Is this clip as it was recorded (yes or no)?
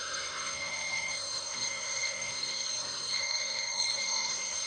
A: no